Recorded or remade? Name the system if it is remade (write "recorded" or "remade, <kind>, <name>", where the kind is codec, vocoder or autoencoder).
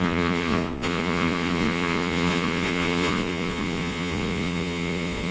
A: remade, vocoder, Vocos